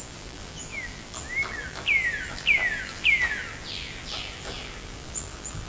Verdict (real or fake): fake